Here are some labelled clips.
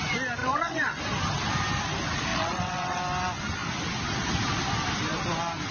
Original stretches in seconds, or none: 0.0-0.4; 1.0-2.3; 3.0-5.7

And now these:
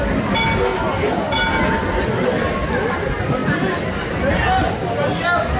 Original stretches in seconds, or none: 0.0-5.6

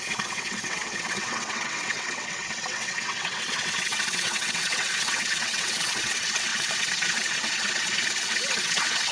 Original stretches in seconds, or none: none

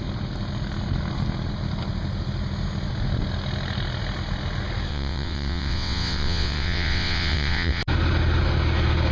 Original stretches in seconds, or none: 0.0-4.9; 7.8-9.1

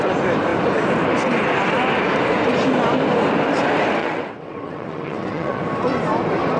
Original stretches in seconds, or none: 0.0-4.0; 5.6-6.6

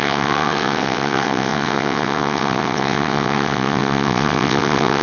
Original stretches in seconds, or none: none

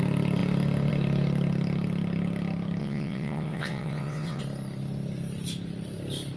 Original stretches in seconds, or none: 0.0-2.8; 4.4-6.4